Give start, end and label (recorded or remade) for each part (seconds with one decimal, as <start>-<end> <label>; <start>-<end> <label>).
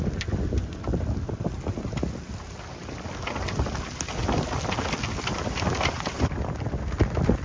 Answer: 0.0-7.4 recorded